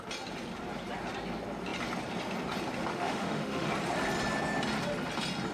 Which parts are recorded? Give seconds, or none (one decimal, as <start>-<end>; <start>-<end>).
0.0-2.9; 3.7-5.5